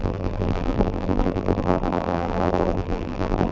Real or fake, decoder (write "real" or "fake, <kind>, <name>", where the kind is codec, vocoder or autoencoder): fake, vocoder, BigVGAN v2